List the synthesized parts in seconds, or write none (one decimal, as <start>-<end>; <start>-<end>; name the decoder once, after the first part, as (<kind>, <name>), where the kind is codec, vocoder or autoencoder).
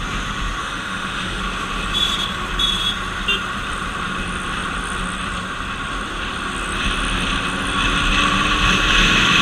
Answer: 0.6-1.4 (autoencoder, DAC-VAE)